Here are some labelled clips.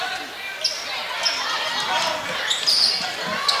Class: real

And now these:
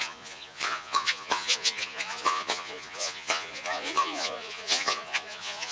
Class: fake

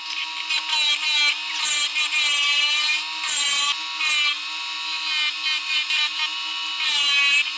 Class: real